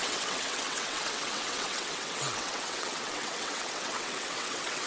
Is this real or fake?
fake